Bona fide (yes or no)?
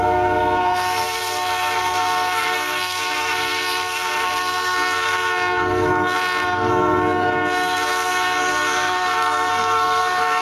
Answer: no